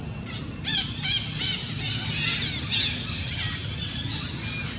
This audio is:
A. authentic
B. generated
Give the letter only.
A